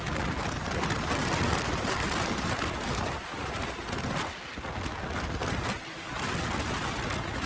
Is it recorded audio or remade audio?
recorded